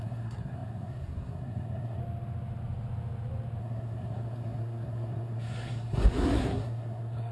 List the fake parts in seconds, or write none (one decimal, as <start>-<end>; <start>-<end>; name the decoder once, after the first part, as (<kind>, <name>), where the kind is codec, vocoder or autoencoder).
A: 0.0-2.0 (codec, SNAC); 3.6-7.3